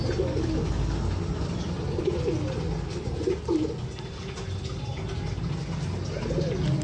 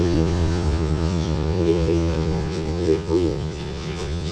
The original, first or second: first